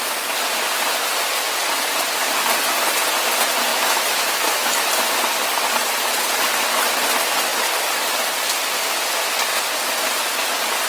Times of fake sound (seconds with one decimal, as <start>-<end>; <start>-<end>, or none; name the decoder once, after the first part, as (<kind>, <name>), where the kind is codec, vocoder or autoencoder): 3.7-5.2 (autoencoder, DAC-VAE)